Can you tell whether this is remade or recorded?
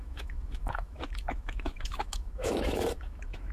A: remade